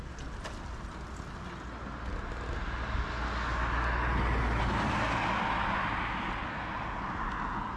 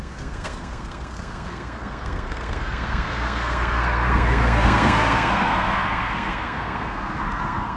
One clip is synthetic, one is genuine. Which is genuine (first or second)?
first